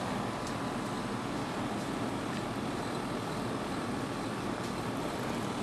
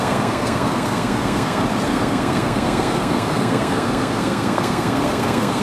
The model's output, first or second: second